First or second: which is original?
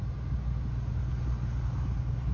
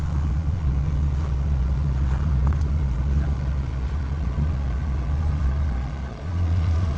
first